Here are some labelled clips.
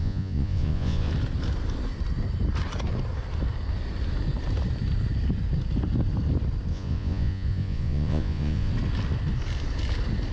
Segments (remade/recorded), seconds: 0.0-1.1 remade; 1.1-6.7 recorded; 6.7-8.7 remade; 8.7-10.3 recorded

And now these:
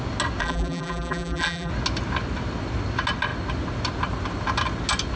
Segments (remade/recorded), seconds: 0.0-0.4 recorded; 0.4-1.7 remade; 1.7-5.2 recorded

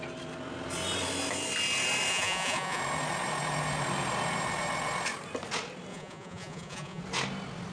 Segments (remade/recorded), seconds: 0.0-2.1 recorded; 2.1-2.8 remade; 2.8-5.9 recorded; 5.9-7.0 remade; 7.0-7.7 recorded

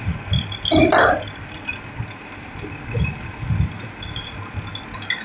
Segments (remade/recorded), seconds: 0.0-0.8 recorded; 0.8-3.9 remade; 3.9-5.2 recorded

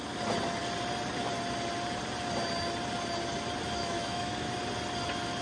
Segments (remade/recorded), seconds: 0.0-3.8 recorded; 3.8-4.5 remade; 4.5-5.4 recorded

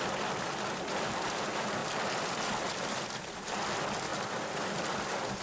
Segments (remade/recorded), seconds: 0.0-5.4 recorded

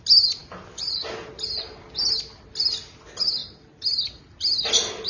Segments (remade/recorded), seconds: 0.0-5.1 recorded

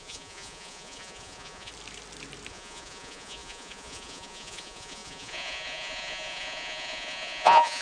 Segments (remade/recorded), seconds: 0.0-1.7 remade; 1.7-2.5 recorded; 2.5-7.8 remade